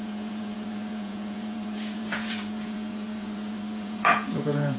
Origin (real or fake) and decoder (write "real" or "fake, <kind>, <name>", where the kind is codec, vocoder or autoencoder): fake, vocoder, Vocos